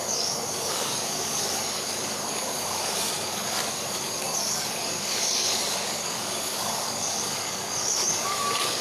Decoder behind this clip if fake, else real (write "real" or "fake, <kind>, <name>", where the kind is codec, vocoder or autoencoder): fake, codec, DAC